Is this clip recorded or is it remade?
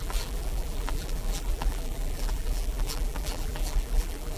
remade